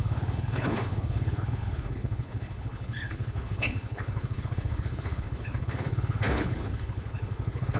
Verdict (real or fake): fake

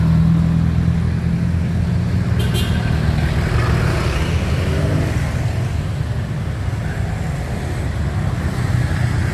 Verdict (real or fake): real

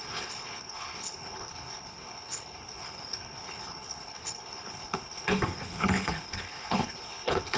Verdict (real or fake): fake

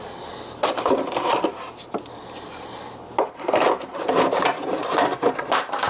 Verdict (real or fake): real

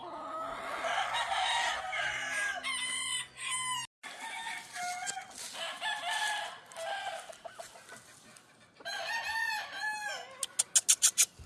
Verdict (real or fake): real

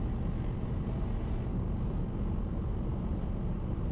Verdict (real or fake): real